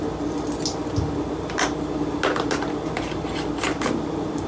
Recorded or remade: recorded